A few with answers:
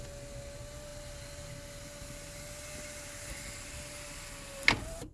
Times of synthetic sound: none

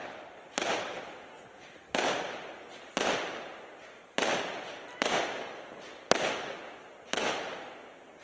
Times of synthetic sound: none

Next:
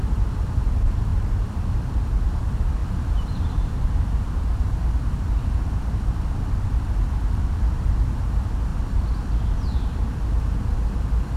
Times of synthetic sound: 1.1-2.3 (vocoder, BigVGAN v2); 2.8-3.7

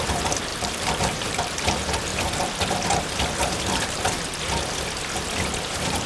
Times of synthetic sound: 0.5-1.6 (vocoder, BigVGAN v2)

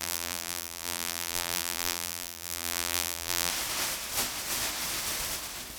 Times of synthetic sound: 0.0-3.5 (vocoder, BigVGAN v2)

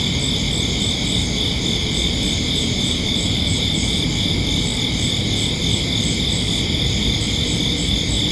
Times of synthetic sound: 1.8-4.1 (vocoder, BigVGAN v2)